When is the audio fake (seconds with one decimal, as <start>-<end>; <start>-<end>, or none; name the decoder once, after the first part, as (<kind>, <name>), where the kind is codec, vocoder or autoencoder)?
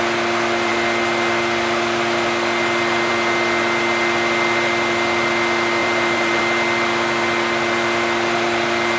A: 5.8-6.4 (vocoder, BigVGAN v2)